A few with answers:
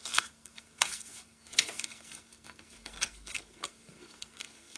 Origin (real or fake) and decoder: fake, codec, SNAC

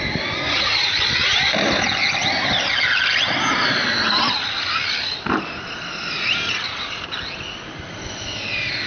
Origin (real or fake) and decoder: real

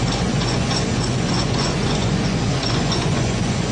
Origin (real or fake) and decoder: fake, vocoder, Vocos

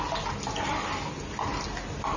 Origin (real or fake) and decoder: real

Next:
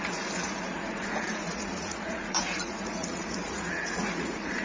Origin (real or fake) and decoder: fake, vocoder, Vocos